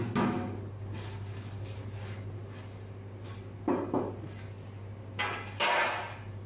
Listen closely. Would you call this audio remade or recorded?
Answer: recorded